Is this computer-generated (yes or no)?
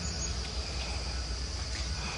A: no